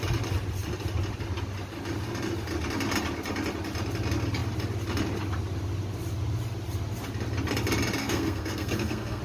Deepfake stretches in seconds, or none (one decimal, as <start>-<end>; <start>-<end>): 8.0-9.2